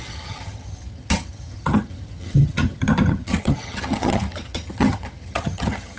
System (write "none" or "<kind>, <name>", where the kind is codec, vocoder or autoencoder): vocoder, HiFi-GAN